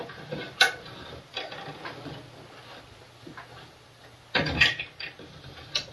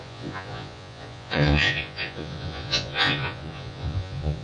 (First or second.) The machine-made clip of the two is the second